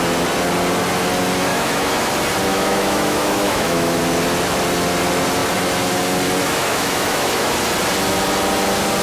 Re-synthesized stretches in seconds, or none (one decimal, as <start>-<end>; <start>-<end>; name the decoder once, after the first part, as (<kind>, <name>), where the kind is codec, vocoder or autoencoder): 1.5-2.1 (autoencoder, DAC-VAE); 2.5-4.0; 6.4-7.5